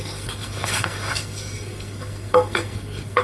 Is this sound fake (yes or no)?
yes